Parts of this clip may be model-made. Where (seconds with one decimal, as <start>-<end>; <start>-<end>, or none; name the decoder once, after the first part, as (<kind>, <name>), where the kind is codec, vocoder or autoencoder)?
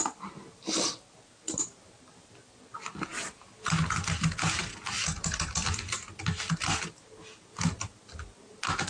none